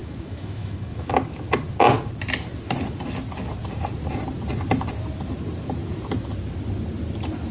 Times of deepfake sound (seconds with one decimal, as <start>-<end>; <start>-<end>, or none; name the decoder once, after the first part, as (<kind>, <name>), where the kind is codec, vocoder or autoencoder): 0.0-1.1 (autoencoder, DAC-VAE)